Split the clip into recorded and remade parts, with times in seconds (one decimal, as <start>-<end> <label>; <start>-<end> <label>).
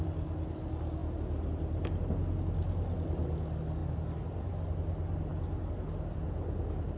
0.0-7.0 recorded